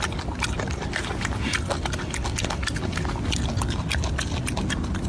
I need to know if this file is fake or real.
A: real